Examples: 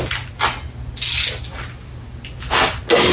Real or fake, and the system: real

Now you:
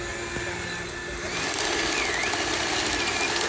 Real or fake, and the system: real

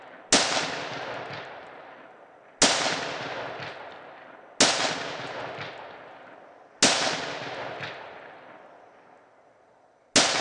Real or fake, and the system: real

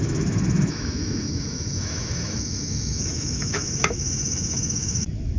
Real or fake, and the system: fake, autoencoder, DAC-VAE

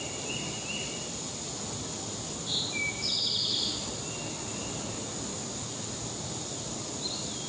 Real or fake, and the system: real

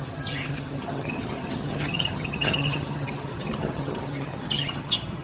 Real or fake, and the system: fake, vocoder, HiFi-GAN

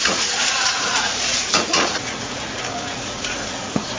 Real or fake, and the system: fake, vocoder, Vocos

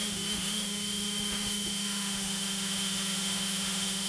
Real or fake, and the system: fake, autoencoder, DAC-VAE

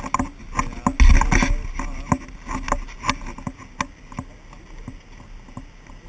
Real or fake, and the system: real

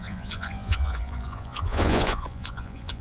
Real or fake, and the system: fake, vocoder, Vocos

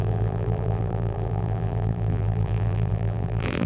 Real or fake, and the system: fake, vocoder, BigVGAN v2